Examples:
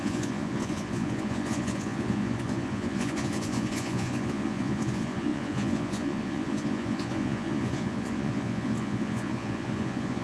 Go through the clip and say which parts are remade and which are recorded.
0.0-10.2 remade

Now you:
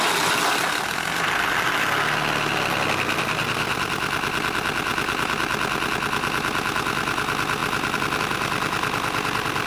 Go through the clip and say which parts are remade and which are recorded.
0.0-9.7 recorded

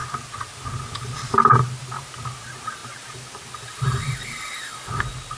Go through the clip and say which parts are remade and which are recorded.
0.0-5.4 recorded

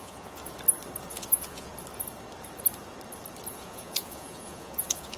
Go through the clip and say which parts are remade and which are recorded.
0.0-0.4 remade; 0.4-1.1 recorded; 1.1-1.7 remade; 1.7-3.5 recorded; 3.5-5.2 remade

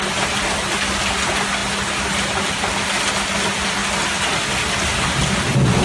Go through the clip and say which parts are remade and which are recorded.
0.0-5.8 recorded